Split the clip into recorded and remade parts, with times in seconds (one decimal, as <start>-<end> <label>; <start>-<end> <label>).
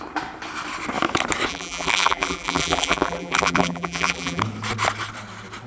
0.0-1.5 recorded; 1.5-4.4 remade; 4.4-5.7 recorded